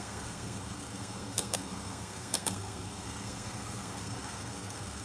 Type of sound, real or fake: fake